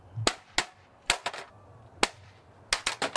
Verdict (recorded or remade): recorded